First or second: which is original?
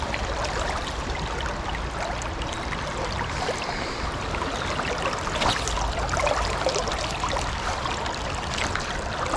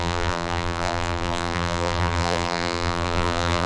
first